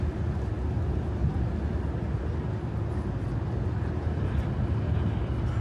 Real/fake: real